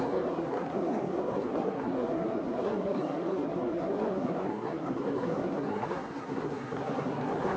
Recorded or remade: remade